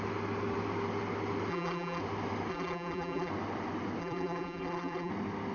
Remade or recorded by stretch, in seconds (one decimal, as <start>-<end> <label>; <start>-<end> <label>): 0.0-1.5 recorded; 1.5-2.0 remade; 2.0-2.5 recorded; 2.5-3.3 remade; 3.3-4.0 recorded; 4.0-5.1 remade; 5.1-5.5 recorded